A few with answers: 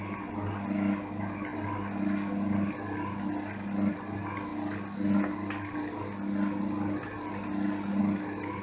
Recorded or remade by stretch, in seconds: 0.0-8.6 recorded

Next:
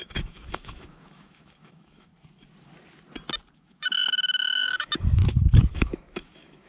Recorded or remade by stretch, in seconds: 0.0-2.1 remade; 2.1-3.5 recorded; 3.5-5.2 remade; 5.2-5.7 recorded; 5.7-6.7 remade

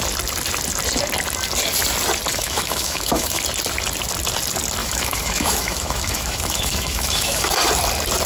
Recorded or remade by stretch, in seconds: 0.0-2.3 recorded; 2.3-3.4 remade; 3.4-4.8 recorded; 4.8-7.5 remade; 7.5-8.3 recorded

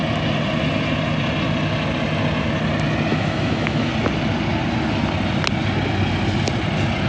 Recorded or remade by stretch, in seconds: 0.0-3.1 recorded; 3.1-3.9 remade; 3.9-7.1 recorded

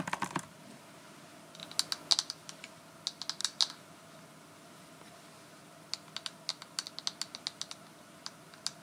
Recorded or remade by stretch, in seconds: 0.0-8.8 recorded

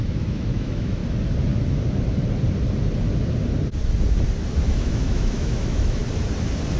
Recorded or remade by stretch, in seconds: 0.0-1.0 remade; 1.0-4.6 recorded; 4.6-6.0 remade; 6.0-6.8 recorded

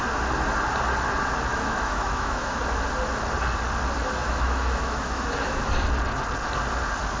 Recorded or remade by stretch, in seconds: 0.0-1.5 recorded; 1.5-2.6 remade; 2.6-4.2 recorded; 4.2-5.7 remade; 5.7-7.2 recorded

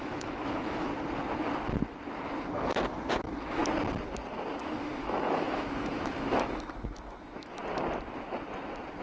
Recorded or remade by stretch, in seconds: 0.0-0.9 remade; 0.9-3.1 recorded; 3.1-3.6 remade; 3.6-4.6 recorded; 4.6-7.6 remade; 7.6-9.0 recorded